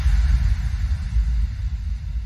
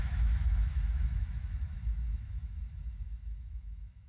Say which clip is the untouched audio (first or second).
first